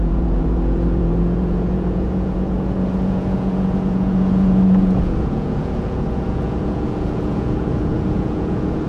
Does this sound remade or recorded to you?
remade